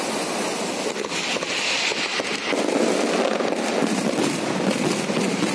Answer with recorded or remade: recorded